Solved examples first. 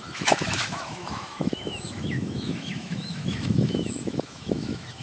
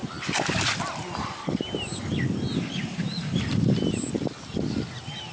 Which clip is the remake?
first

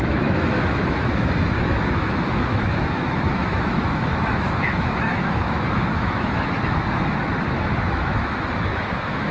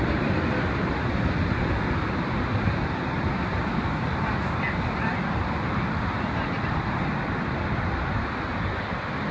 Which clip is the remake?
first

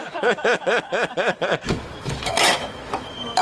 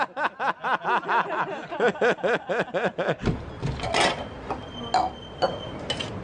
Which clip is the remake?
first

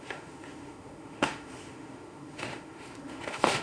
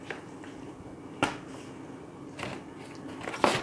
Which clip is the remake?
first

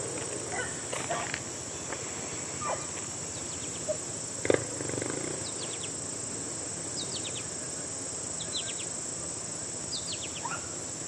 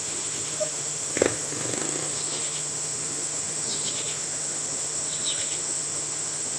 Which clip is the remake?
second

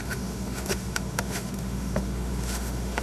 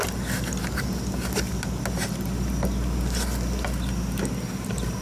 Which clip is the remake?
first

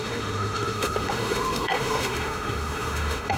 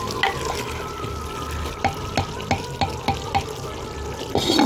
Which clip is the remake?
first